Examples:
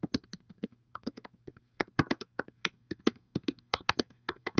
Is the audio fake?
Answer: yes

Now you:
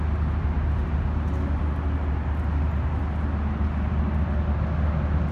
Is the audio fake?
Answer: no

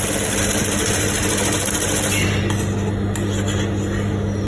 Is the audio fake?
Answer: no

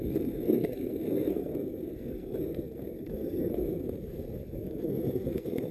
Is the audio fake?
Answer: yes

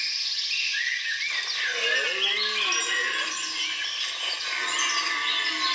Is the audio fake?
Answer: no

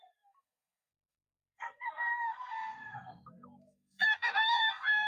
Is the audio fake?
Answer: yes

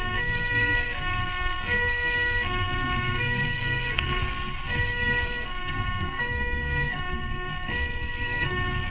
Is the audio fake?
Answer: yes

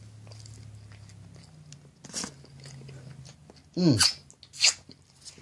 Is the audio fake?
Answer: no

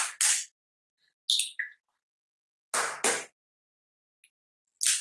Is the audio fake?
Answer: no